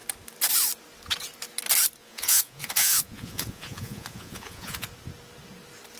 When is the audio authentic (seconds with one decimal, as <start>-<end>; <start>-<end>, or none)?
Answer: 0.0-2.0; 4.9-6.0